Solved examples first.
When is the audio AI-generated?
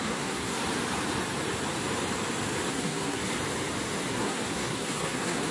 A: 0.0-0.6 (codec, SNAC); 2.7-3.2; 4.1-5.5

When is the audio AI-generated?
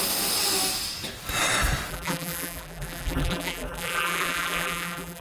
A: 1.9-5.2 (vocoder, BigVGAN v2)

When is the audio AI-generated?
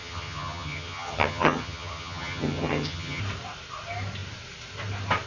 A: 0.0-3.2 (vocoder, HiFi-GAN)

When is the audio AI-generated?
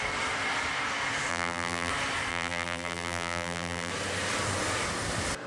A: 1.3-1.9 (vocoder, BigVGAN v2); 2.3-3.9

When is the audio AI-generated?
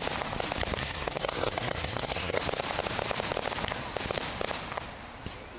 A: 0.8-2.4 (codec, SNAC)